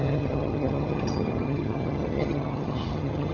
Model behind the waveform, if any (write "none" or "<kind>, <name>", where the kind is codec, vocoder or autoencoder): vocoder, HiFi-GAN